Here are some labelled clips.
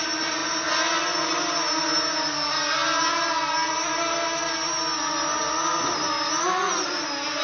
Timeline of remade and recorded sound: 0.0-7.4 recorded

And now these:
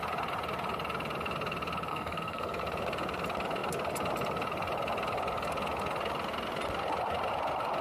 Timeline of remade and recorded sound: 0.0-1.9 recorded; 1.9-2.6 remade; 2.6-7.8 recorded

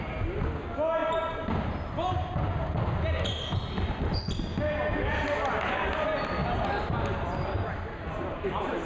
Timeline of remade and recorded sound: 0.0-8.8 recorded

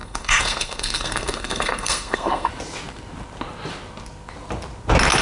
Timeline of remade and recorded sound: 0.0-2.5 remade; 2.5-5.2 recorded

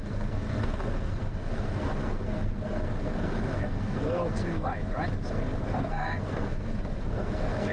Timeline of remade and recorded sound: 0.0-4.7 remade; 4.7-5.3 recorded; 5.3-7.7 remade

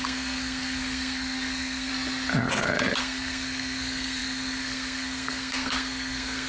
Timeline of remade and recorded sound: 0.0-1.9 remade; 1.9-3.0 recorded; 3.0-6.5 remade